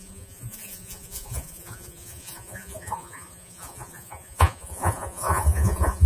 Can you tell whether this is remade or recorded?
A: remade